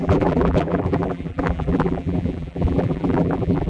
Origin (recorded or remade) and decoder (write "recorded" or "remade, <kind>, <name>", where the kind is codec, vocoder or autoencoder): remade, vocoder, BigVGAN v2